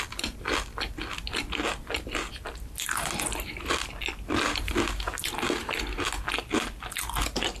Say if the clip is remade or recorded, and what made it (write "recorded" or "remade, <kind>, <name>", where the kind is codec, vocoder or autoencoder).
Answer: recorded